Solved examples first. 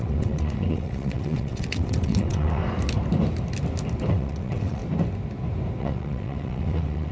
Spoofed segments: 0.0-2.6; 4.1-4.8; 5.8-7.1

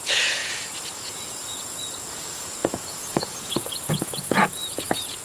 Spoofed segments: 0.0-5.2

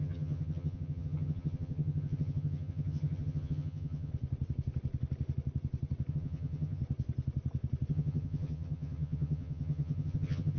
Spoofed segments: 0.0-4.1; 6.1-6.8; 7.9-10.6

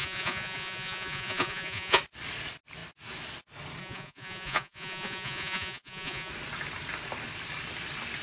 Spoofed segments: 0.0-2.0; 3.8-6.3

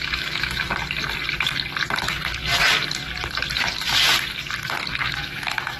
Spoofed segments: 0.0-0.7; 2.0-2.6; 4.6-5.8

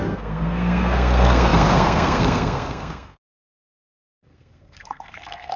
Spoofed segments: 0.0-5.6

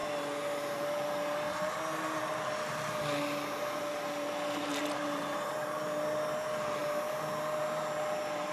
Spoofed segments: 4.7-5.5

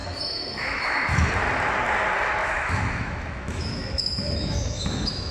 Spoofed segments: 0.0-1.3; 2.4-5.3